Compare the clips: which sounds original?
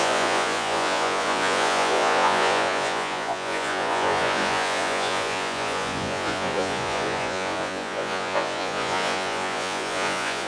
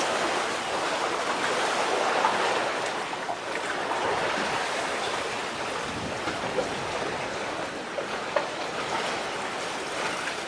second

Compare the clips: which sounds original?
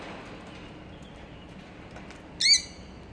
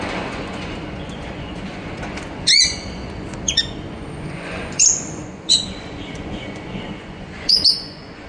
first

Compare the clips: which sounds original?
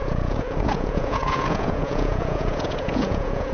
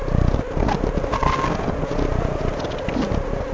second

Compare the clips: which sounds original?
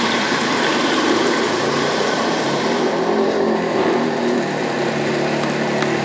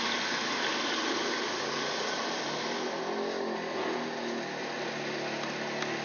second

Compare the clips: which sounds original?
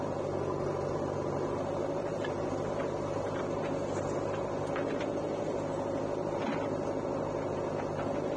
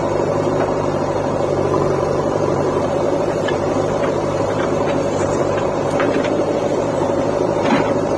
first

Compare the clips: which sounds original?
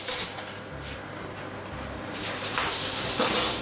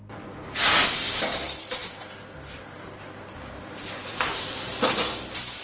first